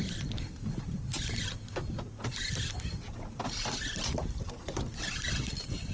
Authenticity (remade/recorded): recorded